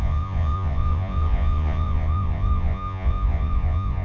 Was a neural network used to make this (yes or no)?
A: yes